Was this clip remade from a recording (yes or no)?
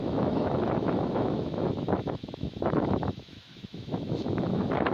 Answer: yes